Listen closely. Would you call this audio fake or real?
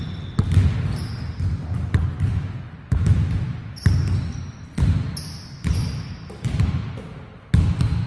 real